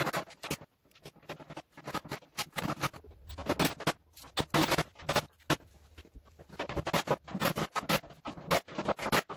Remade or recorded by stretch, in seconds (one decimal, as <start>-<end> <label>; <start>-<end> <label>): 0.0-9.4 recorded